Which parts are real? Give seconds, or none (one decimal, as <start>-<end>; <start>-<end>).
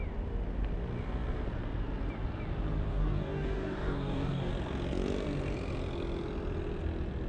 0.0-2.9; 4.5-7.3